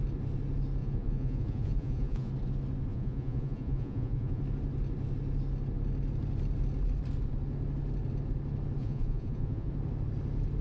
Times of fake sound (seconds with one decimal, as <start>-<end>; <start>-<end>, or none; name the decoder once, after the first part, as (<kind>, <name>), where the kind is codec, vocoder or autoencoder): 0.8-2.3 (vocoder, Vocos); 2.9-4.4; 8.8-9.7